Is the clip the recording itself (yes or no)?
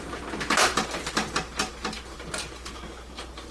yes